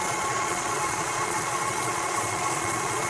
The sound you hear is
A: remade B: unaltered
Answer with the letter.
A